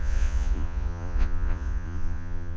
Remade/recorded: remade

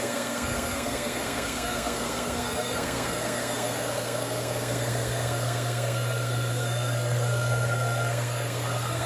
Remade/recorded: remade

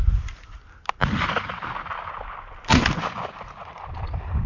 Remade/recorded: recorded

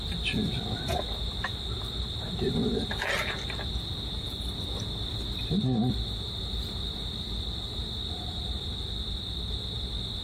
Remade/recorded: recorded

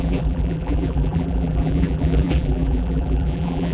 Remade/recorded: remade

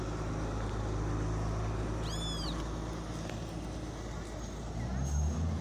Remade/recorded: recorded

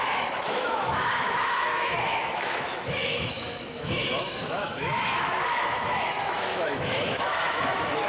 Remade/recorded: remade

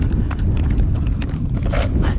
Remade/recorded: recorded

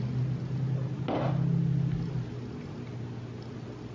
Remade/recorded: recorded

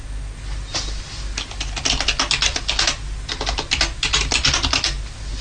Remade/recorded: recorded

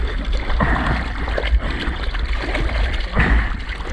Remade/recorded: recorded